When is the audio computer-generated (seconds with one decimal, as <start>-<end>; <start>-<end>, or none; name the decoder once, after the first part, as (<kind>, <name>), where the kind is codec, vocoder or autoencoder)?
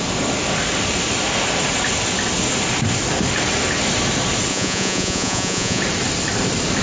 4.5-5.8 (vocoder, Vocos)